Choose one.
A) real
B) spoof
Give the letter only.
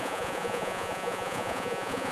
B